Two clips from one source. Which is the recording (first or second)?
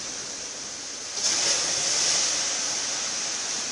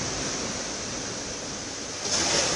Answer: first